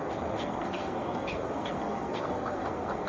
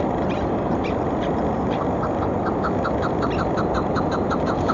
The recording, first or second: second